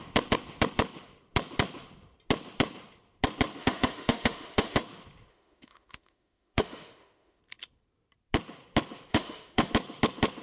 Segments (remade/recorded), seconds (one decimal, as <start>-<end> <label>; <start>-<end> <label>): 0.0-3.6 recorded; 3.6-4.8 remade; 4.8-5.3 recorded; 5.3-7.4 remade; 7.4-9.1 recorded; 9.1-9.7 remade; 9.7-10.4 recorded